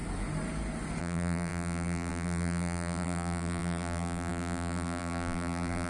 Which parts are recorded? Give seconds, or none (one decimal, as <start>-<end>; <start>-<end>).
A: 0.0-1.0